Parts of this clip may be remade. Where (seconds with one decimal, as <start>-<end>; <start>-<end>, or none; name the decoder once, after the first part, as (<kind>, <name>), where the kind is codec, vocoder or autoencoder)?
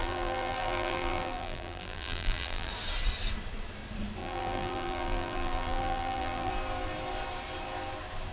0.0-2.7 (vocoder, BigVGAN v2); 4.2-6.5